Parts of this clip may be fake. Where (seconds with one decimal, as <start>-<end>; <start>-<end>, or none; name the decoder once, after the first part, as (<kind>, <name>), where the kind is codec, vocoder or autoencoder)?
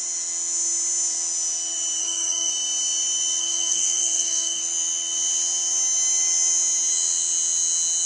2.0-2.5 (codec, SNAC); 3.4-4.6